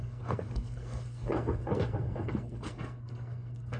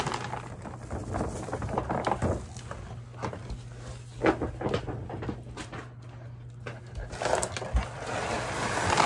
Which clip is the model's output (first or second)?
first